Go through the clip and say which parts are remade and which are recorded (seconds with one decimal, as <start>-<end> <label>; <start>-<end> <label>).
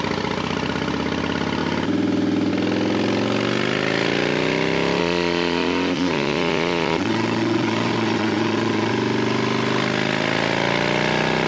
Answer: 0.0-5.0 recorded; 5.0-8.9 remade; 8.9-11.5 recorded